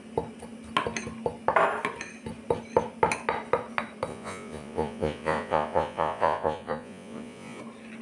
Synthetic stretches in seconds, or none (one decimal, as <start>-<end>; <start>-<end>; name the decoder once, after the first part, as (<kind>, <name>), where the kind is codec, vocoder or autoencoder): 4.1-7.6 (vocoder, Vocos)